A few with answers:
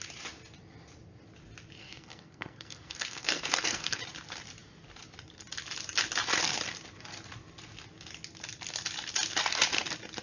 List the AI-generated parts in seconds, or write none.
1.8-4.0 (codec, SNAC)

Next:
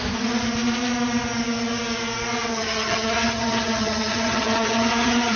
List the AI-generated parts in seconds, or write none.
2.5-5.4 (vocoder, HiFi-GAN)

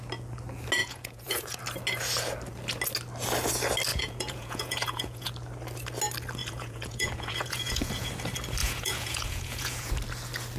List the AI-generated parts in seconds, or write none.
0.8-1.6 (vocoder, Vocos); 3.9-5.3; 6.4-8.1; 8.6-9.9

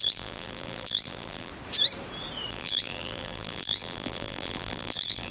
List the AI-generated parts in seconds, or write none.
0.0-1.5 (vocoder, BigVGAN v2); 2.5-5.3

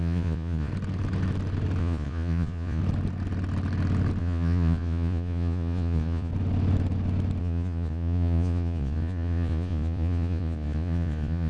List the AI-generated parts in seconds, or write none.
0.0-0.7 (vocoder, Vocos); 1.8-2.8; 4.2-6.3; 7.4-11.5

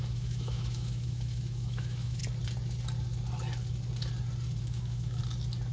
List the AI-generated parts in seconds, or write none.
0.0-2.2 (autoencoder, DAC-VAE); 4.6-5.2

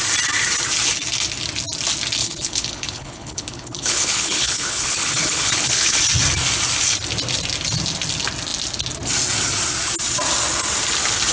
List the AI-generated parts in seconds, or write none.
2.2-6.0 (codec, HILCodec)